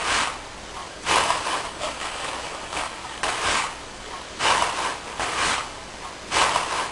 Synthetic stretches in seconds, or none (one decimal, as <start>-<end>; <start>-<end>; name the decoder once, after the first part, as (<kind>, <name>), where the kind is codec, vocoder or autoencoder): 0.8-4.6 (codec, DAC); 5.1-6.0